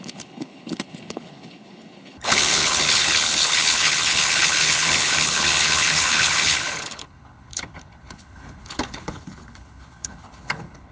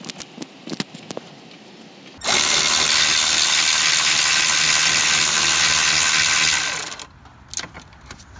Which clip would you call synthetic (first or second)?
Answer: first